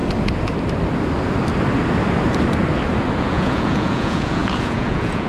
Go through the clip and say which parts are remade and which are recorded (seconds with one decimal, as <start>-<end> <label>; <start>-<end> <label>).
0.0-3.2 recorded; 3.2-5.3 remade